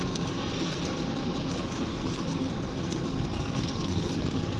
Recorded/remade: remade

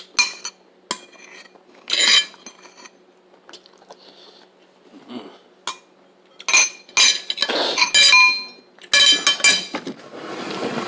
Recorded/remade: recorded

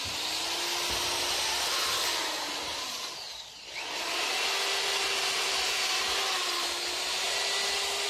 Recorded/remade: recorded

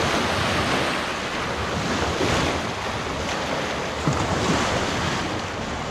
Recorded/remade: recorded